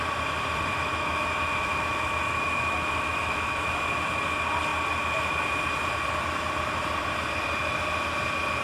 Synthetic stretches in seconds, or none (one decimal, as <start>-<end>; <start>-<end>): 0.7-3.9

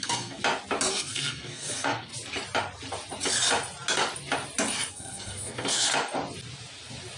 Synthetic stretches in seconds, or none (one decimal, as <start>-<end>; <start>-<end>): 0.0-0.4; 0.9-2.1; 4.9-5.9

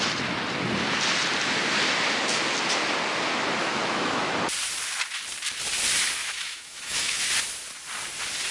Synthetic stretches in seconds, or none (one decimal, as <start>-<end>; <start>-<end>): 3.6-4.3; 6.2-7.2

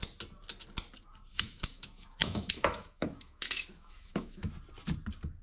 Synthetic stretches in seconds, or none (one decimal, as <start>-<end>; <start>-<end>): 1.3-4.5

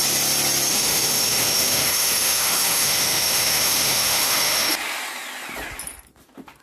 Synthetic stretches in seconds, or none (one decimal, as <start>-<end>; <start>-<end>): 0.7-4.7